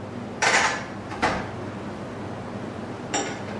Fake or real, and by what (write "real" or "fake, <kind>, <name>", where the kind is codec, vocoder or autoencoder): real